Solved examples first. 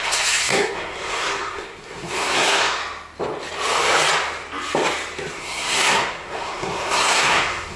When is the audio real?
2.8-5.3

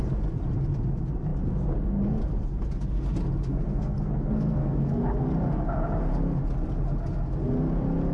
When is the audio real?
0.0-3.5; 5.0-8.1

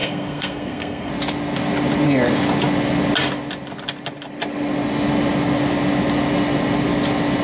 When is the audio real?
1.1-7.4

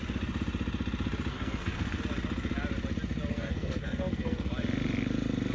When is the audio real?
0.0-1.3; 2.0-3.3; 4.5-5.5

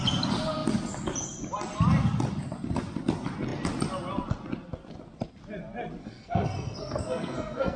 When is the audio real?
0.0-6.0

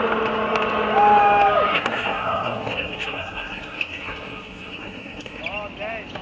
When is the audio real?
0.0-1.7; 5.4-6.2

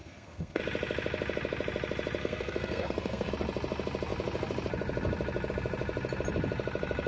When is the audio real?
0.6-2.2; 3.3-7.1

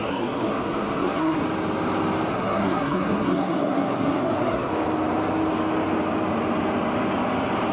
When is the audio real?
1.4-2.3; 4.7-7.7